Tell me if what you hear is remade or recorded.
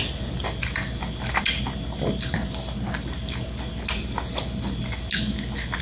recorded